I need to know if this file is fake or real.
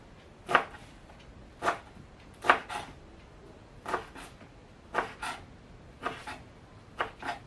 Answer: real